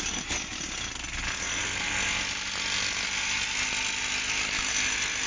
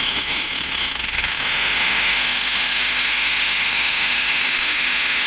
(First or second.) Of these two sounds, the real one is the first